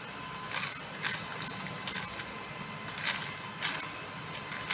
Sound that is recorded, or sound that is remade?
recorded